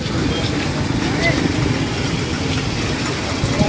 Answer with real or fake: real